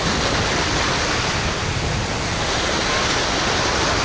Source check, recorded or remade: recorded